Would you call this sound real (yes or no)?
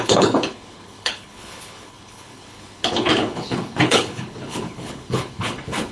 no